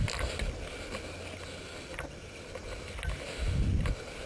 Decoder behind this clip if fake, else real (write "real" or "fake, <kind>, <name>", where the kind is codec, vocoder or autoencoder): real